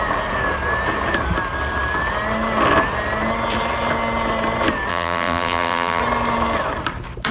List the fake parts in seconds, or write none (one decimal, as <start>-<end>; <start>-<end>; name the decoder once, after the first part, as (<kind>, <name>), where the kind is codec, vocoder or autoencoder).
4.9-6.0 (vocoder, BigVGAN v2)